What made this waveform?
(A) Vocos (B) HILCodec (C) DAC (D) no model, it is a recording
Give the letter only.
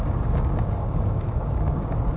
C